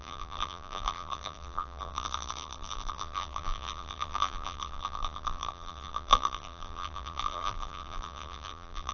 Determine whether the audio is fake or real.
fake